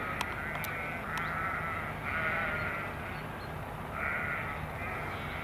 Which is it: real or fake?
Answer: real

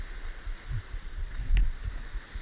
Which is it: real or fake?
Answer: real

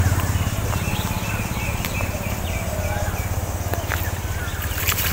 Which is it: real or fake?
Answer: real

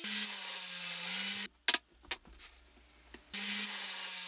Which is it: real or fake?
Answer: real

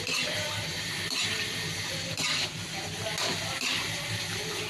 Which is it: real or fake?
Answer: fake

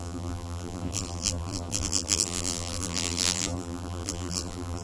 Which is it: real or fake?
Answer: fake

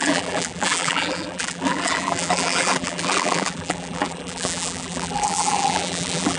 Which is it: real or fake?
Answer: fake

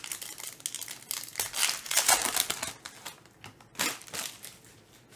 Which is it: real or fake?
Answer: real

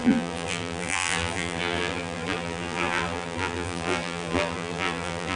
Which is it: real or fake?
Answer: fake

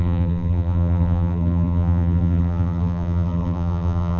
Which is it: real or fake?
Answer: fake